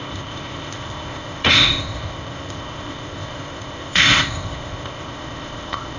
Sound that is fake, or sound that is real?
fake